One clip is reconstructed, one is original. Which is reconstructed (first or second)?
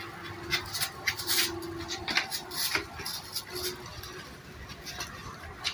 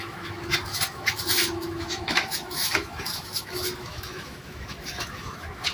second